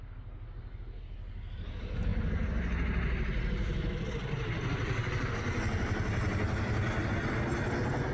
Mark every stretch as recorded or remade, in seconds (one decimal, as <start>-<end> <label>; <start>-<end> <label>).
0.0-8.1 recorded